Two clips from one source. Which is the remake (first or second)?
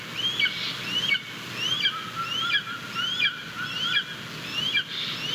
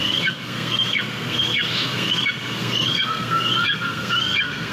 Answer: second